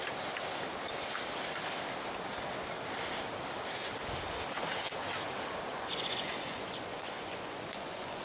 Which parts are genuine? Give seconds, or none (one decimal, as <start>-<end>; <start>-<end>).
0.0-5.7